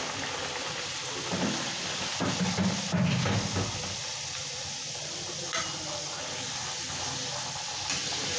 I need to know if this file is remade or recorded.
recorded